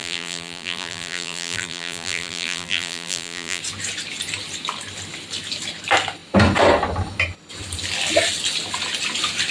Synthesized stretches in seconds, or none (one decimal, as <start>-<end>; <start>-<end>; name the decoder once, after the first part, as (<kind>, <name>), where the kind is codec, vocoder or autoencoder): 0.0-3.6 (vocoder, BigVGAN v2)